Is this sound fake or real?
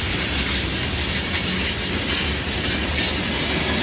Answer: real